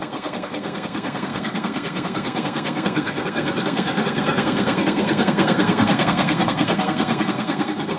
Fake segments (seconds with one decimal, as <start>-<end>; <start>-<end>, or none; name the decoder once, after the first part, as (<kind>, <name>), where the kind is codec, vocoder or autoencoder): 0.0-8.0 (codec, SNAC)